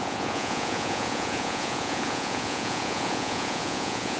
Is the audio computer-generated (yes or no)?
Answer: yes